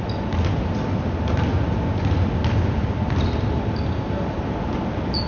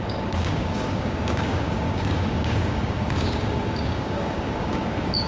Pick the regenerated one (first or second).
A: second